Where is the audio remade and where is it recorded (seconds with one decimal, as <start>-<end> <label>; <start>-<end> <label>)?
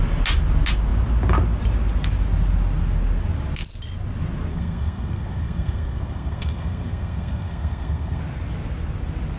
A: 0.0-4.5 recorded; 4.5-8.2 remade; 8.2-9.4 recorded